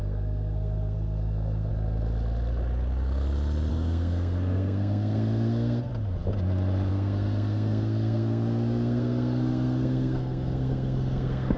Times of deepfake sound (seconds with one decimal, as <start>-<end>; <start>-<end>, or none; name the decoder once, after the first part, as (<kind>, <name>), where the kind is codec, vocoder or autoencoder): 0.0-1.7 (codec, SNAC); 3.7-5.9; 6.9-11.6